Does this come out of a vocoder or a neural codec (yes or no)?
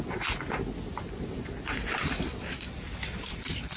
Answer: no